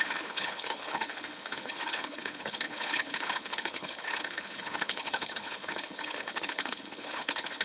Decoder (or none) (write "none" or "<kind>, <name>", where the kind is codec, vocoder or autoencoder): codec, HILCodec